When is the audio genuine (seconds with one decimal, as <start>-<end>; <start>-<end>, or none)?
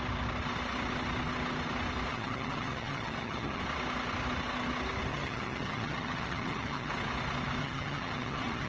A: 0.0-2.1; 3.6-5.1; 6.9-7.6